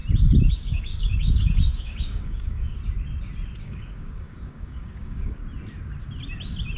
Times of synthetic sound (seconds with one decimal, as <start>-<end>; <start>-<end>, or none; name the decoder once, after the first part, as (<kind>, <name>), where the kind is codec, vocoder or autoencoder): 0.5-2.8 (codec, DAC); 3.6-5.4